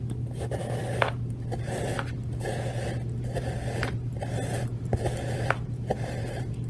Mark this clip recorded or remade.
remade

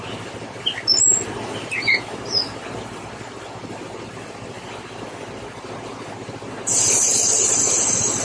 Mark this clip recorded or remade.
recorded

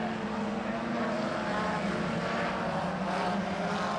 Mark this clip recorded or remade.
recorded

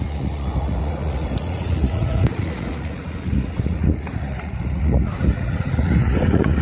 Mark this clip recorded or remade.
remade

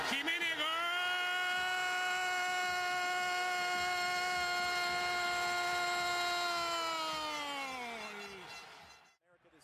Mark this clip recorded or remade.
recorded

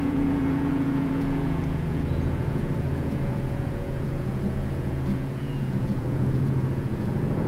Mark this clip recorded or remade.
remade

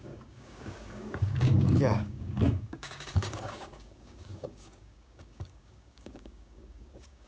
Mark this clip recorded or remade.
remade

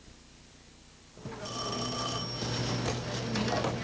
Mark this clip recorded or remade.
recorded